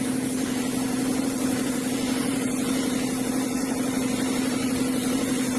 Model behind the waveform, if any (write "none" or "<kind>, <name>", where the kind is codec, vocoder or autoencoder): vocoder, BigVGAN v2